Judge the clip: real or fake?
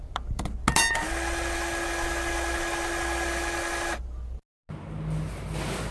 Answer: real